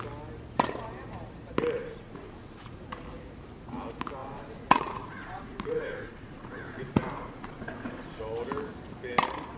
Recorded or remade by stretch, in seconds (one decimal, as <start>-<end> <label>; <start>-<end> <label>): 0.0-1.8 recorded; 1.8-2.8 remade; 2.8-4.2 recorded; 4.2-8.2 remade; 8.2-9.6 recorded